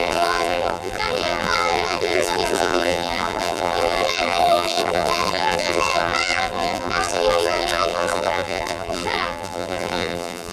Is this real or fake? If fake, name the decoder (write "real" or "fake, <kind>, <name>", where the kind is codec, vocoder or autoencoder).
fake, vocoder, BigVGAN v2